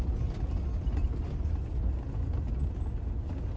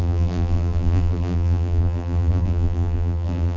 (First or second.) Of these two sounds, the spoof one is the second